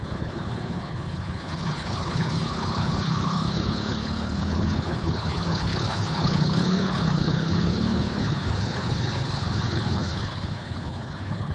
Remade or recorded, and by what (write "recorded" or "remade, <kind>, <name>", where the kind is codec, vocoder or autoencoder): remade, codec, HILCodec